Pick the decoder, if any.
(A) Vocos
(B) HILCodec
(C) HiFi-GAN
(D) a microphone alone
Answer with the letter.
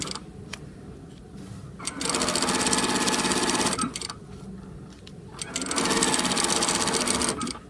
D